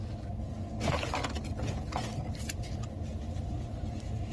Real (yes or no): yes